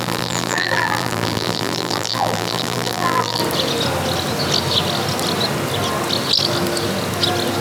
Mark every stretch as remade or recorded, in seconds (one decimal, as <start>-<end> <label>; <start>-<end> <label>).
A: 0.0-3.4 remade; 3.4-7.6 recorded